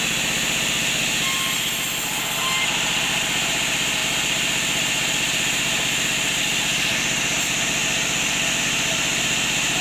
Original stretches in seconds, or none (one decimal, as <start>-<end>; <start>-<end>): 0.0-9.8